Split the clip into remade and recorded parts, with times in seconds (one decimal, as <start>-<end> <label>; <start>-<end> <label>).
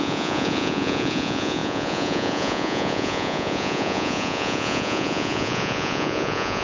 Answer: 0.0-6.6 remade